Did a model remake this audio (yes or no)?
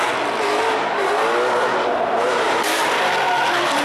no